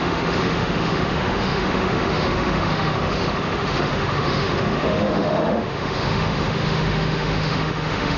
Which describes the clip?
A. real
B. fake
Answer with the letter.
B